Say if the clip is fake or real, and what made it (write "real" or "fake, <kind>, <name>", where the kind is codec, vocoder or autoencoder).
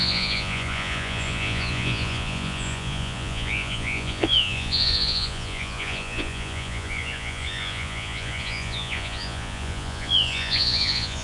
fake, vocoder, Vocos